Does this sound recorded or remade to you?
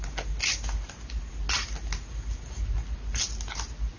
recorded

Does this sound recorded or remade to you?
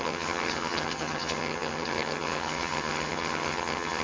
remade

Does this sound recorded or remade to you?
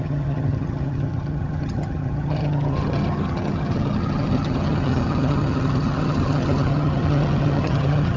remade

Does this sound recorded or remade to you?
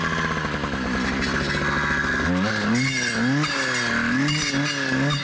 recorded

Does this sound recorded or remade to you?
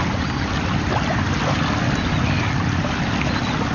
recorded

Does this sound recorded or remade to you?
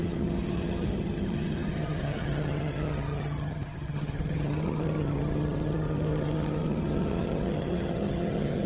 remade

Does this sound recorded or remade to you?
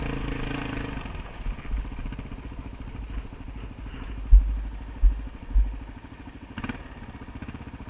recorded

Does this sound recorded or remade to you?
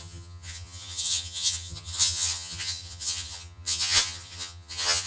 remade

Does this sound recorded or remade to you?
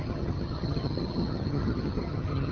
remade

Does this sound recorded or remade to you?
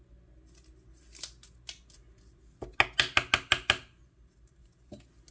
recorded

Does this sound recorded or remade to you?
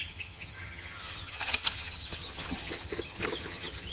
remade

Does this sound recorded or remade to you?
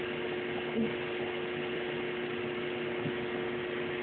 recorded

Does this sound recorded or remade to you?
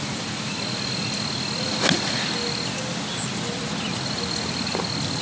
recorded